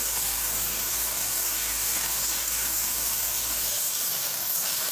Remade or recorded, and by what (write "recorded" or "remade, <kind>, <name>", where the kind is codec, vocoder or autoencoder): remade, codec, DAC